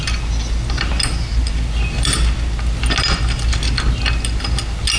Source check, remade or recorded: recorded